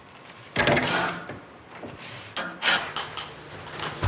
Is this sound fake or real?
real